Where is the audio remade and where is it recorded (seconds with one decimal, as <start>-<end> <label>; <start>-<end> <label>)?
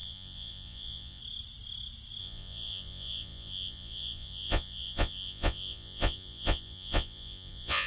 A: 0.0-1.2 remade; 1.2-2.2 recorded; 2.2-7.9 remade